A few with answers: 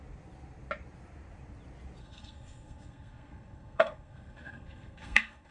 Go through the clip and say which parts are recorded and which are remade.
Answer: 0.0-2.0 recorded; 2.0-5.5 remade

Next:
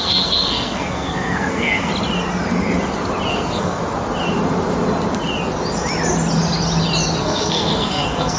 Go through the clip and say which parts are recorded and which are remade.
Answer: 0.0-1.9 remade; 1.9-3.3 recorded; 3.3-3.8 remade; 3.8-7.2 recorded; 7.2-8.4 remade

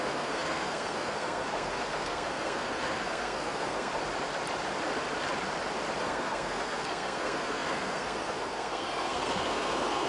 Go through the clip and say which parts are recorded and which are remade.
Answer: 0.0-3.9 remade; 3.9-6.0 recorded; 6.0-10.1 remade

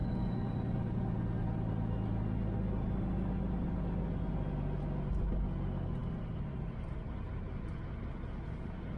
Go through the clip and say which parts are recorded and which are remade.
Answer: 0.0-9.0 recorded

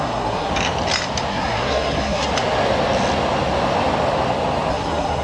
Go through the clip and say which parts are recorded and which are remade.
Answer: 0.0-0.5 remade; 0.5-1.3 recorded; 1.3-2.3 remade; 2.3-4.7 recorded; 4.7-5.2 remade

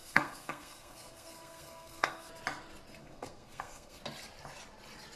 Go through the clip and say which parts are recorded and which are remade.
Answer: 0.0-2.3 remade; 2.3-3.0 recorded; 3.0-4.0 remade; 4.0-5.2 recorded

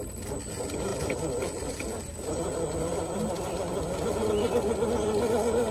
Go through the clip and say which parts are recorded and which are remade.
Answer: 0.0-5.7 recorded

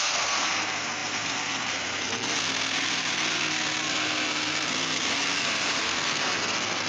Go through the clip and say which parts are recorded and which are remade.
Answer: 0.0-6.9 remade